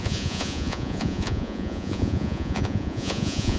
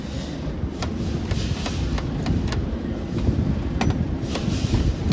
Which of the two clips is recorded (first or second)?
second